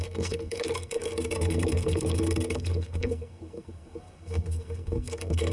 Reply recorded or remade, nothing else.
remade